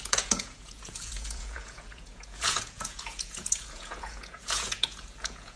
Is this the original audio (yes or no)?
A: no